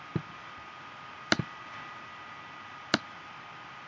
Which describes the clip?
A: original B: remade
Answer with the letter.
A